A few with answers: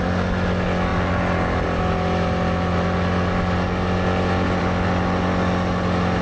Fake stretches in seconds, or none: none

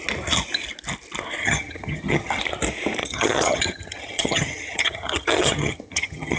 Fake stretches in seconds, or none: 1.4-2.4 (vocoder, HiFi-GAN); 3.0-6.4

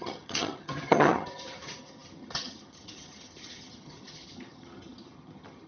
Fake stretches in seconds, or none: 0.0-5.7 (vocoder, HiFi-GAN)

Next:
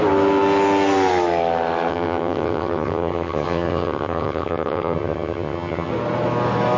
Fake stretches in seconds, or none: 1.9-5.9 (vocoder, HiFi-GAN)

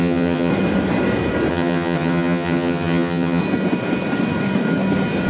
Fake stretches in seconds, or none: 0.0-0.5 (vocoder, HiFi-GAN); 1.5-3.4